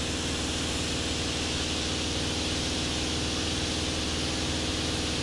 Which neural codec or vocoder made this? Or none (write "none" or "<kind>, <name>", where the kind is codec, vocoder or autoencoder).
none